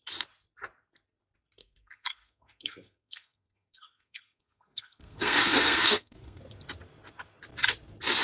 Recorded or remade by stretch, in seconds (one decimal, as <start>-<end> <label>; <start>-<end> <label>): 0.0-1.6 recorded; 1.6-6.4 remade; 6.4-8.2 recorded